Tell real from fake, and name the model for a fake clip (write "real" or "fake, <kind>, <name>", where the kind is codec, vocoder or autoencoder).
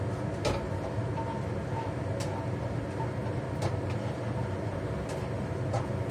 real